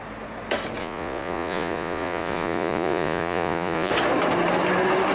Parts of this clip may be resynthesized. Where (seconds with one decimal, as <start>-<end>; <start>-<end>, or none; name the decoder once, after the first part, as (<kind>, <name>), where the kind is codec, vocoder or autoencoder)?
0.8-3.9 (vocoder, Vocos)